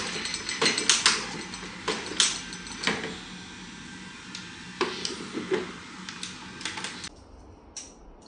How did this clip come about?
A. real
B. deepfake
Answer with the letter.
A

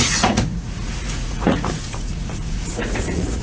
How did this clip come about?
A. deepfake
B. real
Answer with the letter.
A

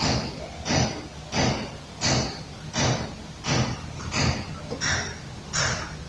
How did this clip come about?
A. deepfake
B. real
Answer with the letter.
B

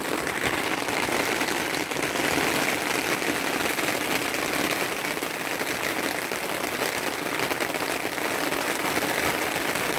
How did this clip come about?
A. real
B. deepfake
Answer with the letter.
A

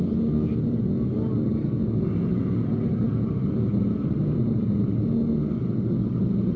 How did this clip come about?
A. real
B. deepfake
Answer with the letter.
A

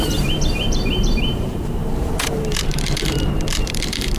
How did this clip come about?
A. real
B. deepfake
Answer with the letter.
B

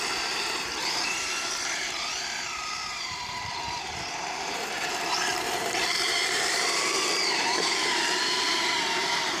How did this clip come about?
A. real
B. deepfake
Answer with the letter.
B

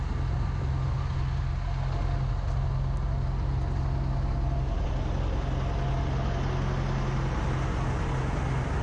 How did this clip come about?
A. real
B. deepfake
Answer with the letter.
A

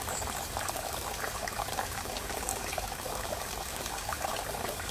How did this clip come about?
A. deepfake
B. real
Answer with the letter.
A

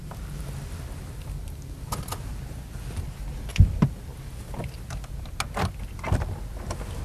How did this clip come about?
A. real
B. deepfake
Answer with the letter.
A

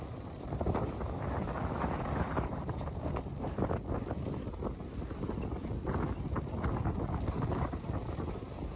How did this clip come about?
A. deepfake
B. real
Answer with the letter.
B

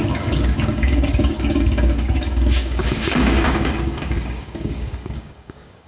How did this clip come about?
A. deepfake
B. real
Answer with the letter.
A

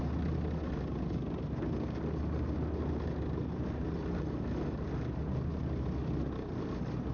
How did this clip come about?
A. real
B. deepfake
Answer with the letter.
A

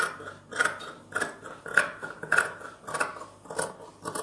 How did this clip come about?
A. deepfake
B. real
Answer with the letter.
B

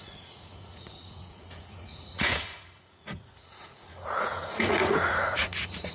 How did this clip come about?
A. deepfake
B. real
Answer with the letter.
A